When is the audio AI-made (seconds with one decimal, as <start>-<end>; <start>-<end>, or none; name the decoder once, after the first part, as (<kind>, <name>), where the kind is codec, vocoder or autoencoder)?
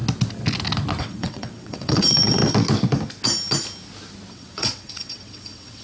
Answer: 1.0-2.4 (vocoder, WaveNeXt); 4.3-5.8